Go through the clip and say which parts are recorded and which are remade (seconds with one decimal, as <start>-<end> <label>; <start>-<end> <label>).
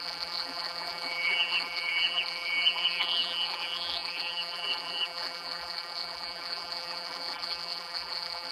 0.0-8.5 remade